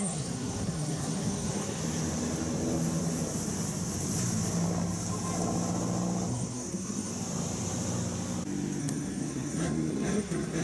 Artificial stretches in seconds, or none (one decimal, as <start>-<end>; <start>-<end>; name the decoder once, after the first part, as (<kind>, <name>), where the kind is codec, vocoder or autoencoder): 0.0-1.8 (codec, SNAC); 6.3-7.1; 8.8-10.6

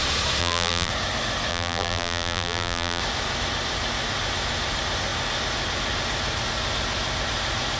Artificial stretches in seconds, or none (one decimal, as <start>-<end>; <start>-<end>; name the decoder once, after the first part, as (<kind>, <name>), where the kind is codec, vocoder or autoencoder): 0.4-0.9 (vocoder, BigVGAN v2); 1.5-3.0

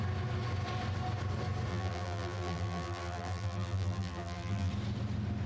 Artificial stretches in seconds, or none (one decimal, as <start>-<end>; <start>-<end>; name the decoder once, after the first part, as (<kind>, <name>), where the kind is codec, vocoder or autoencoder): 1.7-4.7 (vocoder, BigVGAN v2)

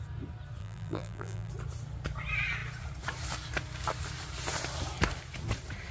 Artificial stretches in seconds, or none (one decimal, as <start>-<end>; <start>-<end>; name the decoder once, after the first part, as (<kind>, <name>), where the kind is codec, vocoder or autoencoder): 0.6-1.5 (vocoder, BigVGAN v2)

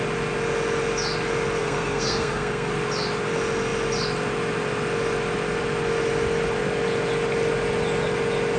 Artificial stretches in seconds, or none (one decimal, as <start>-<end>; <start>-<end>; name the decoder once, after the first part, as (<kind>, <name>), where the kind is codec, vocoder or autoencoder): 1.6-2.7 (codec, SNAC)

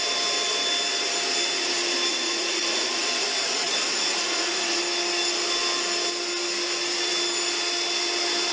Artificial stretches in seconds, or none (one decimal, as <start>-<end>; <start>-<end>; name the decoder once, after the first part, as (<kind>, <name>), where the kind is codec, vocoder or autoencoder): 2.1-4.8 (vocoder, Vocos)

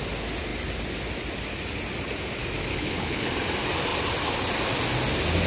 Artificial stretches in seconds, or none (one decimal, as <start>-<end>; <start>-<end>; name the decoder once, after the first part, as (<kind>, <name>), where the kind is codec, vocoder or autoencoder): 2.7-3.3 (codec, HILCodec)